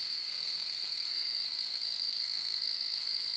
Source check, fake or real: fake